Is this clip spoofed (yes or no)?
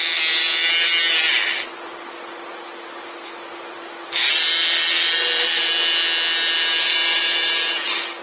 no